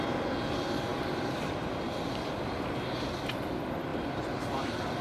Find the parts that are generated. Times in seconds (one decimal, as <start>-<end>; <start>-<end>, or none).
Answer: 3.9-5.0